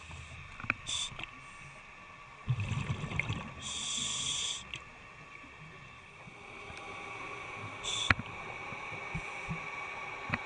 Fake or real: real